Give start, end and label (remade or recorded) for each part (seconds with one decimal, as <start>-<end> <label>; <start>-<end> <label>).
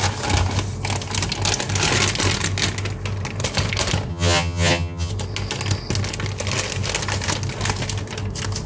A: 0.0-4.1 recorded; 4.1-5.1 remade; 5.1-8.7 recorded